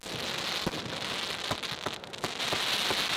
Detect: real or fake real